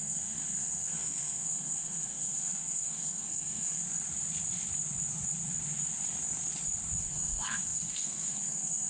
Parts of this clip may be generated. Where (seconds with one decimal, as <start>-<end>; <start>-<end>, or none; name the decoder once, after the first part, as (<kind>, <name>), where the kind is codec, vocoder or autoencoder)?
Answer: 0.0-3.8 (codec, SNAC); 7.0-8.9